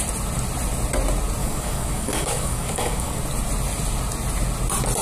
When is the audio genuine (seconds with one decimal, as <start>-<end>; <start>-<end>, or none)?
0.0-1.4; 3.2-5.0